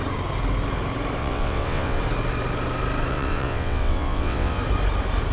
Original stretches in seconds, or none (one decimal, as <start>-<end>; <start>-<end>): 0.0-1.2; 2.0-3.1; 4.6-5.3